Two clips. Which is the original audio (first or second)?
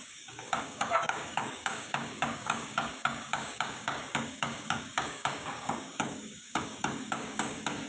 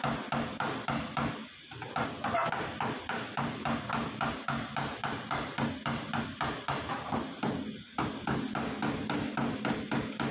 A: second